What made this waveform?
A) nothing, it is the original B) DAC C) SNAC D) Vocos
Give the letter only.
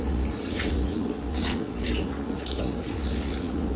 D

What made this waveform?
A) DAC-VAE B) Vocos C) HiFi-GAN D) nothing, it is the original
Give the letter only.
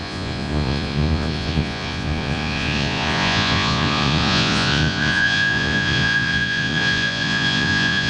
B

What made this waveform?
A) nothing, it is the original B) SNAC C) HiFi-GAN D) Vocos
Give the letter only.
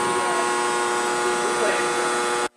A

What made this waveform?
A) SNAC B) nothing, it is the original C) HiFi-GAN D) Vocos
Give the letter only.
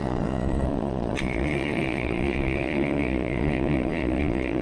D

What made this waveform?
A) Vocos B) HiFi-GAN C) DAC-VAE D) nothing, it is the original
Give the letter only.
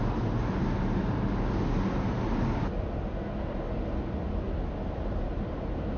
D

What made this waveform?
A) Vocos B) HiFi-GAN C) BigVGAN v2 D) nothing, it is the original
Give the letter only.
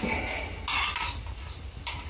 D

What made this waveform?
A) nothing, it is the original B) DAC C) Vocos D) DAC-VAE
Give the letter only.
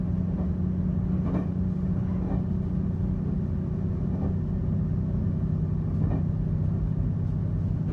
A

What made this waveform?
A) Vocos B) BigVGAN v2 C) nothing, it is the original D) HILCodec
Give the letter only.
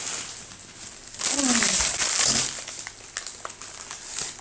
C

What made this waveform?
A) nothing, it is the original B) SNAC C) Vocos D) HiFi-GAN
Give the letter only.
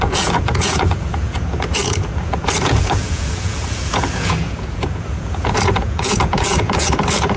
C